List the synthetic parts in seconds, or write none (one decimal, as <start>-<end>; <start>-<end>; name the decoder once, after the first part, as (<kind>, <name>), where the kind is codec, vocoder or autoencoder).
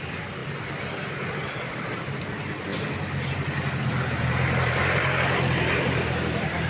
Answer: 0.0-6.7 (vocoder, BigVGAN v2)